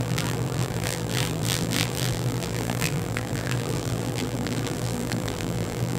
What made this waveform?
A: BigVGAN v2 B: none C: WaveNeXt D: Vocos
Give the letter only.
A